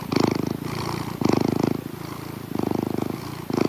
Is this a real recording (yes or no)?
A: yes